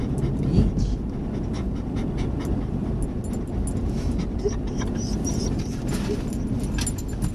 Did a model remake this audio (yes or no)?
no